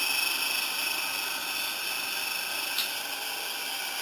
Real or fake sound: real